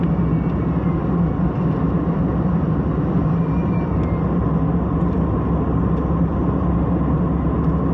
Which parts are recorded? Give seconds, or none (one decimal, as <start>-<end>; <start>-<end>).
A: 0.0-3.2; 4.1-7.9